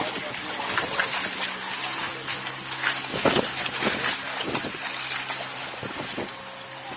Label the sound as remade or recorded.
recorded